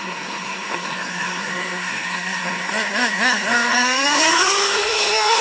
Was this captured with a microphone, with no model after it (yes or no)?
no